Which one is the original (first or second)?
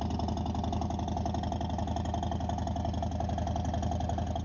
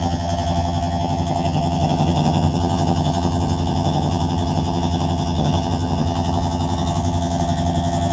first